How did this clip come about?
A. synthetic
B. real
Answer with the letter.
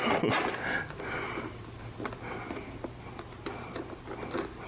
B